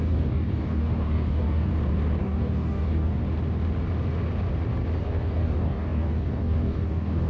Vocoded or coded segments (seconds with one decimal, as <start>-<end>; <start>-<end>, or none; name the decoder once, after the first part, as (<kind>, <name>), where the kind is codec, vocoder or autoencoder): 0.0-1.7 (codec, DAC); 2.2-3.2; 5.0-7.3

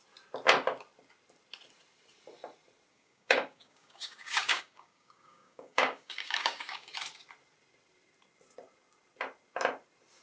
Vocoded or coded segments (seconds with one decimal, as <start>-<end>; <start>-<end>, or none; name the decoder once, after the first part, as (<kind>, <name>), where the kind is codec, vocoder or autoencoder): 2.9-6.9 (codec, DAC)

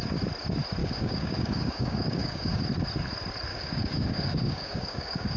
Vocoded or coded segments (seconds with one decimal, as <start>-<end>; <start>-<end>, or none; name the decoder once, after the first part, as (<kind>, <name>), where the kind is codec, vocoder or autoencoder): 0.8-2.6 (codec, DAC); 3.5-5.4

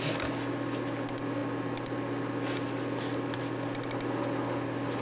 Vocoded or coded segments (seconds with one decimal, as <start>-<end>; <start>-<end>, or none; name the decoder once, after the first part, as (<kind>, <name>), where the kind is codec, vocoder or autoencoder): none